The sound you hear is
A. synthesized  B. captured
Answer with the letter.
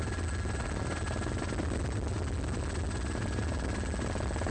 B